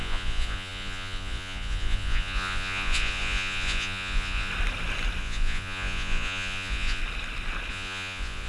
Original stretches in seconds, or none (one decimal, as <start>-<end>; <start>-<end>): 4.5-5.2; 7.0-7.7

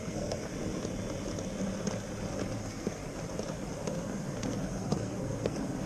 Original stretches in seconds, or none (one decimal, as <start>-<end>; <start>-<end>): 0.5-2.6; 3.0-3.9

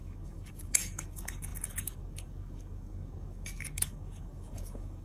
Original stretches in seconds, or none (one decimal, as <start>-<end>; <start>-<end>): none